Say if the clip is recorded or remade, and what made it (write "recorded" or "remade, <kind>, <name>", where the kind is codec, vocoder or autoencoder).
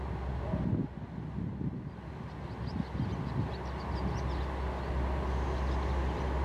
recorded